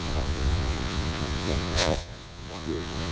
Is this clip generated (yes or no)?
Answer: yes